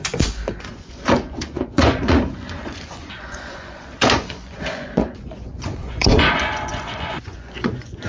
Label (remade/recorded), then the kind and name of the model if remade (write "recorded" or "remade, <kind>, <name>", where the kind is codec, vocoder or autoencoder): remade, vocoder, Vocos